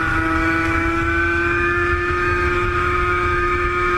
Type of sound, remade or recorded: remade